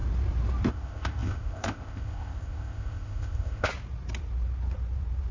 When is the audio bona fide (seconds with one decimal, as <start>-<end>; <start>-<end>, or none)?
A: 0.0-0.7; 3.7-5.3